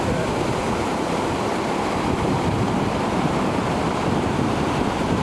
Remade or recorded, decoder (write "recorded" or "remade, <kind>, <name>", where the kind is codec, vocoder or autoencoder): remade, vocoder, BigVGAN v2